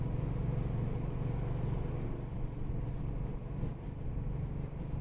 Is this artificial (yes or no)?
no